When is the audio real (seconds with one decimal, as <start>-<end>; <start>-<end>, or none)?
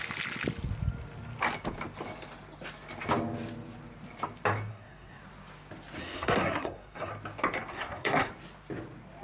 0.0-4.7; 5.2-6.0; 7.1-7.7; 8.3-9.2